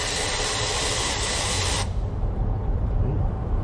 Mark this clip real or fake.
fake